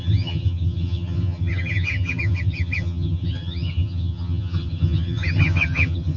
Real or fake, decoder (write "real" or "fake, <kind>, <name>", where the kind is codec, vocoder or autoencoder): fake, vocoder, HiFi-GAN